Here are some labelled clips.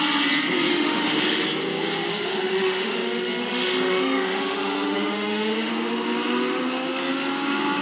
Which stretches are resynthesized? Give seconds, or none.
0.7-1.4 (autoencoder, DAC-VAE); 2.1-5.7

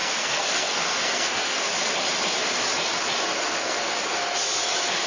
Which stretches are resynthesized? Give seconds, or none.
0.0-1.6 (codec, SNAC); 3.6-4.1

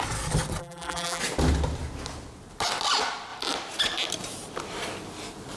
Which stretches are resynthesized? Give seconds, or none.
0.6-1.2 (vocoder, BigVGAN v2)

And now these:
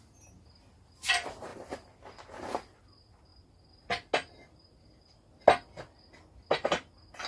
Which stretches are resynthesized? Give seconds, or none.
none

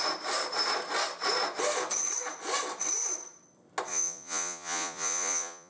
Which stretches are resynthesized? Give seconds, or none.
3.9-5.7 (vocoder, Vocos)